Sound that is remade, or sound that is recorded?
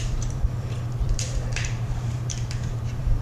remade